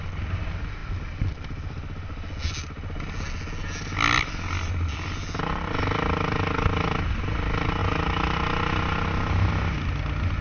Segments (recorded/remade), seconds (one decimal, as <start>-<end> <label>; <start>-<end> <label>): 0.0-10.4 recorded